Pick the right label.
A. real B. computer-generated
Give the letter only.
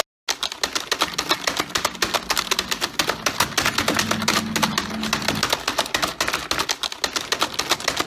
A